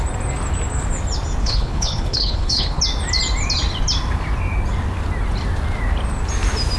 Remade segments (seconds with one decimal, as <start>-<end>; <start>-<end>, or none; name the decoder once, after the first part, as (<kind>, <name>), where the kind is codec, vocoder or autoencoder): 1.4-2.8 (codec, HILCodec)